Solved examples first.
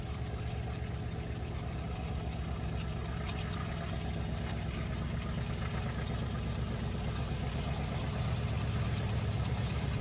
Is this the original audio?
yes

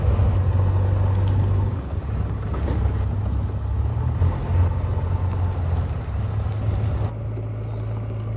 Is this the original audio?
yes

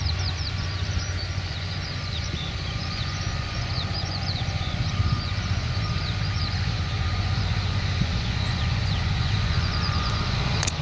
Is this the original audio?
no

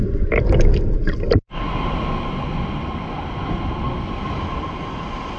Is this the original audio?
yes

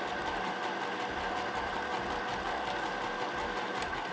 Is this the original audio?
yes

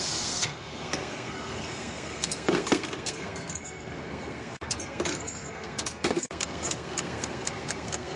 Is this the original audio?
no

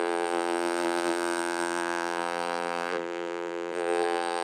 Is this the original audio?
no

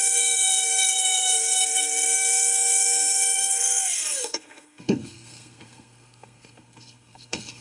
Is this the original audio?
no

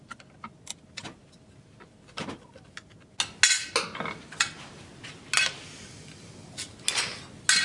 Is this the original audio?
yes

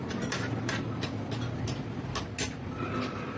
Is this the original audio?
yes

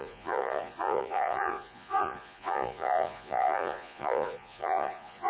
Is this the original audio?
no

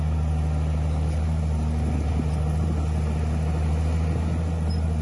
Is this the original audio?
yes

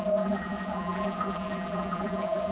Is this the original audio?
no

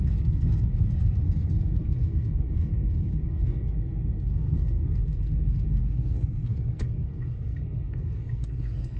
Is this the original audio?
no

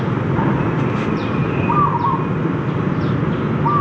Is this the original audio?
yes